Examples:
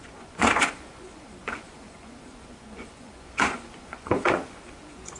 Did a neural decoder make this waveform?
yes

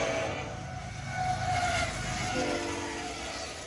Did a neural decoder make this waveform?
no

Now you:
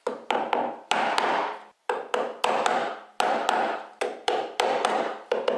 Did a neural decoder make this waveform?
no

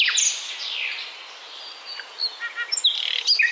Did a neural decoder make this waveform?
no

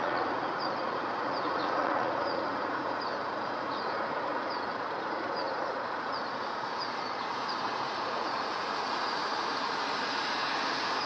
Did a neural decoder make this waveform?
yes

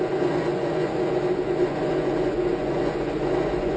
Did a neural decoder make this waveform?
yes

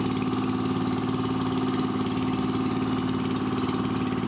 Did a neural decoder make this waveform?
no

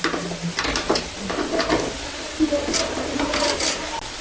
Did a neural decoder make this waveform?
no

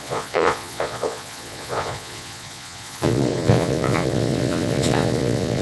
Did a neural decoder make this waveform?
yes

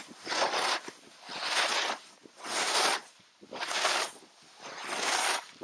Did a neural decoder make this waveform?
no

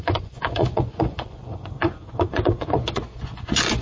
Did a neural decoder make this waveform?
yes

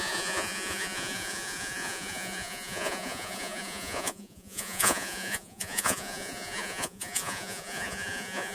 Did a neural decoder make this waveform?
yes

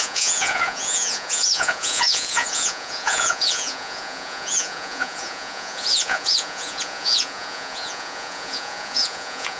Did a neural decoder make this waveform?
yes